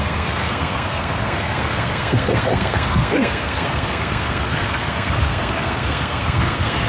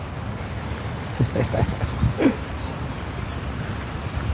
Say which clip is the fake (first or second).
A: first